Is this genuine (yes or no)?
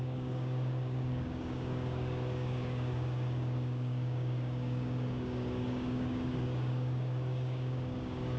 no